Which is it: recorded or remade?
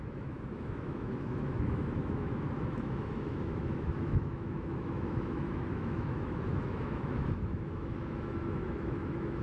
remade